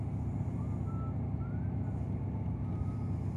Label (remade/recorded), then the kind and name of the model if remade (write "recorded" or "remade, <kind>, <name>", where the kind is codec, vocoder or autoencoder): recorded